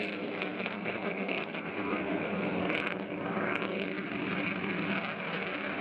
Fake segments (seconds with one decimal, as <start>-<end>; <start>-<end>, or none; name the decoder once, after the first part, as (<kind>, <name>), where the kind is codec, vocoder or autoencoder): 0.0-2.6 (codec, SNAC)